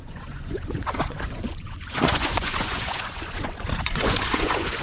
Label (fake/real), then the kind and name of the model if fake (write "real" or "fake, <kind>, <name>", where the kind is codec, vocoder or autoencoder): fake, vocoder, Vocos